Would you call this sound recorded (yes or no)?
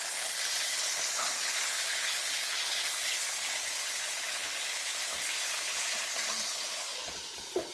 no